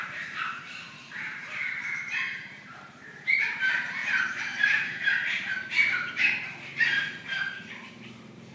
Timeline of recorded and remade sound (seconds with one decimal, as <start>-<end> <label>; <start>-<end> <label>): 0.0-8.5 remade

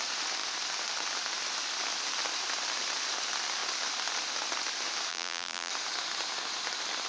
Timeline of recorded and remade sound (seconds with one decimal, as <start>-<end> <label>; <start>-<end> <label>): 0.0-5.1 recorded; 5.1-5.7 remade; 5.7-7.1 recorded

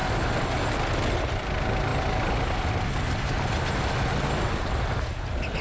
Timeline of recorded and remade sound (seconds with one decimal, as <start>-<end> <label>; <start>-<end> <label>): 0.0-5.6 recorded

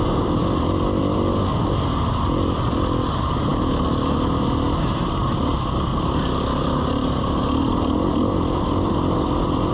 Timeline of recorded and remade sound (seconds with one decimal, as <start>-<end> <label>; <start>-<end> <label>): 0.0-9.7 recorded

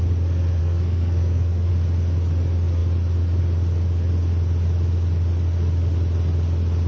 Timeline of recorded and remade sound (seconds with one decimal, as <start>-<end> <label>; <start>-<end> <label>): 0.0-0.6 recorded; 0.6-1.7 remade; 1.7-6.9 recorded

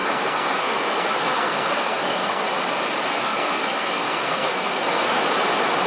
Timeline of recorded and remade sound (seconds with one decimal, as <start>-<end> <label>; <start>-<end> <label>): 0.0-2.4 remade; 2.4-3.2 recorded; 3.2-5.2 remade; 5.2-5.9 recorded